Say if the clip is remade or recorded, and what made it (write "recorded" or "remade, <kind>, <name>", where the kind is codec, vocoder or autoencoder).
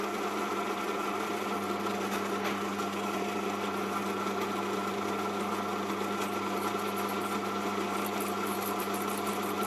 recorded